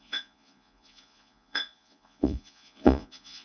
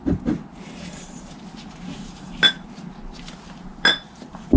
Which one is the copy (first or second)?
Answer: first